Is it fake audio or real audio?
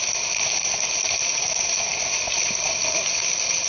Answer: real